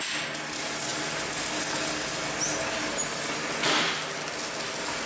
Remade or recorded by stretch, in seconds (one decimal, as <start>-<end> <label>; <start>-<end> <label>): 0.0-5.1 recorded